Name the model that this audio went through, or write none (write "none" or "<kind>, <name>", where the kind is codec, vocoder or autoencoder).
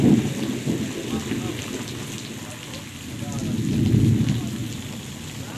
none